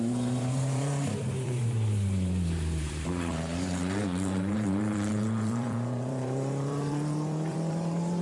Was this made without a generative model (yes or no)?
no